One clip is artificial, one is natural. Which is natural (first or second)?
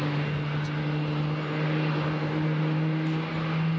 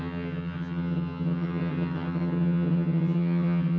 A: first